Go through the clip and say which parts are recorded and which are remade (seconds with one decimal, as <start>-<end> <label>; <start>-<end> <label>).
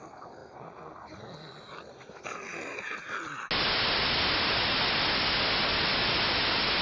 0.0-6.8 recorded